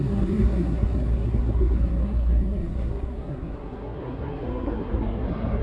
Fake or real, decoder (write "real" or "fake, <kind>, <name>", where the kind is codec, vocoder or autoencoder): fake, codec, SNAC